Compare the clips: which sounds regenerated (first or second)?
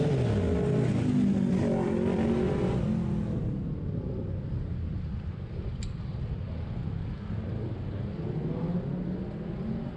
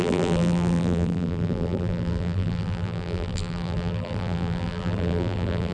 second